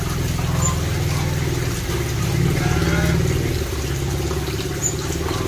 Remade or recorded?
recorded